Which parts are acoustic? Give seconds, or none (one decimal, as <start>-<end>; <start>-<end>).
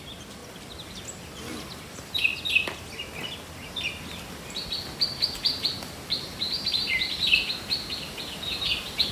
0.4-1.8; 2.3-5.3